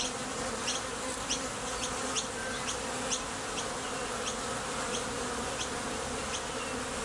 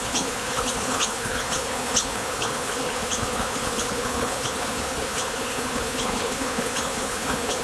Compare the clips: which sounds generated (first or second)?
second